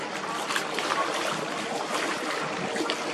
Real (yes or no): yes